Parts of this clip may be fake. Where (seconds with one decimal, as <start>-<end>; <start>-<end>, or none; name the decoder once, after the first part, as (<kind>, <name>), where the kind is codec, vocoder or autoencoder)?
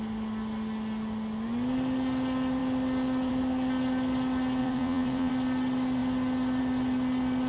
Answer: 4.6-5.3 (vocoder, Vocos)